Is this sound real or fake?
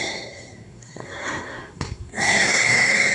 fake